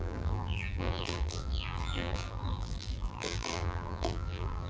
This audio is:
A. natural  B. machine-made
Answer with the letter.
B